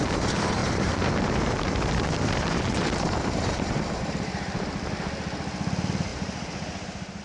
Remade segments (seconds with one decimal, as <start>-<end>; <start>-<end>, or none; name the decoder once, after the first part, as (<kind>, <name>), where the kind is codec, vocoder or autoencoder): 0.6-4.9 (vocoder, BigVGAN v2); 6.1-7.2